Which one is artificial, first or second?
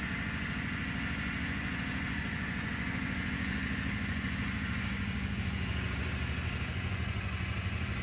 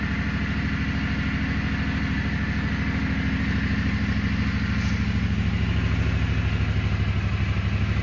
first